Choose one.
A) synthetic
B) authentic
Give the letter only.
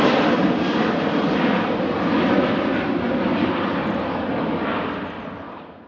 B